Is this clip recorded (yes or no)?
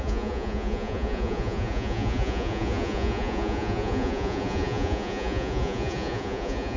no